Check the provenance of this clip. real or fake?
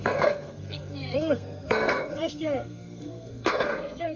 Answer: fake